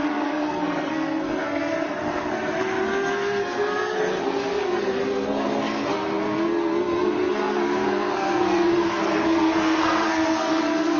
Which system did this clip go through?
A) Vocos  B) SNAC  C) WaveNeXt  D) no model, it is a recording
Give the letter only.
B